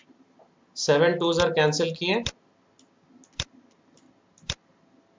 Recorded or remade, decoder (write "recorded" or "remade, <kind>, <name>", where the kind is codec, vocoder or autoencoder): recorded